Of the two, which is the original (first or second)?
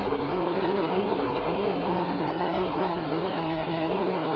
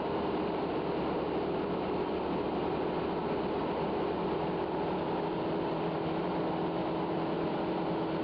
second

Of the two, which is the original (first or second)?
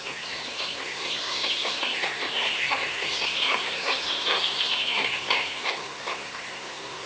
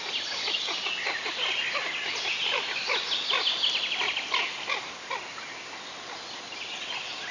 second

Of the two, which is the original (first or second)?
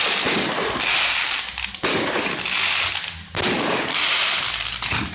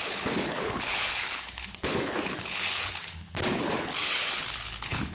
first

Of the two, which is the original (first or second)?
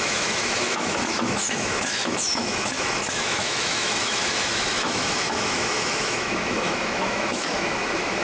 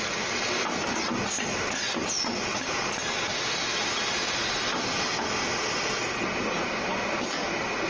second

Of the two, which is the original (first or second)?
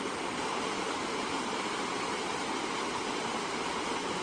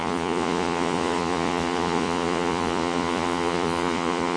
first